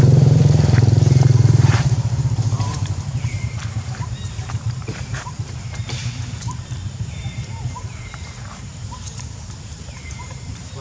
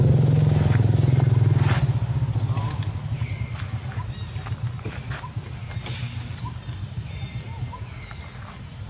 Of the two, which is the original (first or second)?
second